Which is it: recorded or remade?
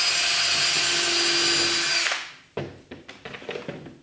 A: recorded